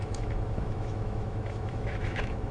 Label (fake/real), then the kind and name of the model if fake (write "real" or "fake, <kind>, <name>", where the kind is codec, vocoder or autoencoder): fake, autoencoder, DAC-VAE